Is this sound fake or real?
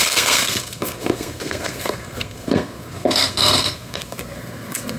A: fake